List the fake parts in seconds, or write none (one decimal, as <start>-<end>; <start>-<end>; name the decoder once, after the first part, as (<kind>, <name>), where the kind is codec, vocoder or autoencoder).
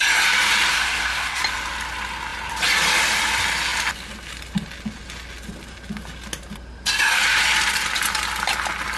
0.7-1.4 (codec, SNAC)